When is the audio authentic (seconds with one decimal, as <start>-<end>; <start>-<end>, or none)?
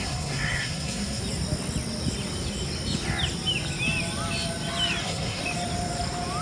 1.2-5.0; 5.4-6.4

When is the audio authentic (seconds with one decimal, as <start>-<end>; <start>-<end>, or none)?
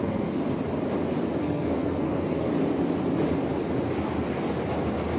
0.4-1.4; 2.5-5.2